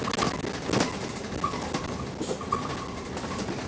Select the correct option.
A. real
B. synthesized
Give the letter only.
A